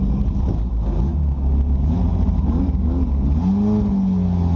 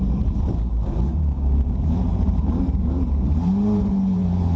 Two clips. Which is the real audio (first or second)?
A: first